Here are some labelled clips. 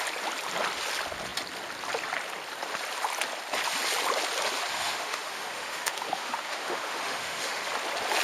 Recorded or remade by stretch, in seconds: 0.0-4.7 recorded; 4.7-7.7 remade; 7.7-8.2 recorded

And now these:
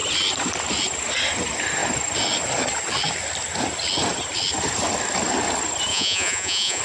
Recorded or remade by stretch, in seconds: 0.0-5.9 recorded; 5.9-6.8 remade

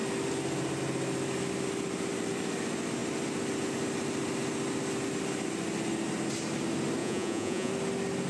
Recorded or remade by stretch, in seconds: 0.0-7.0 recorded; 7.0-7.7 remade; 7.7-8.3 recorded

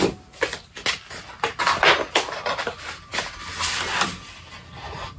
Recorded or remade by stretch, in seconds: 0.0-5.2 recorded

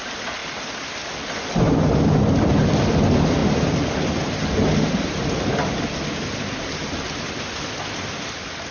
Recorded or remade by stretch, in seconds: 0.0-8.7 recorded

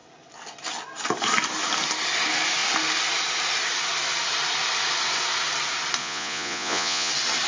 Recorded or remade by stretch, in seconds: 0.0-6.0 recorded; 6.0-7.1 remade; 7.1-7.5 recorded

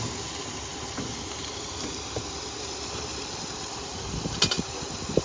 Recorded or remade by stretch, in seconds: 0.0-5.2 recorded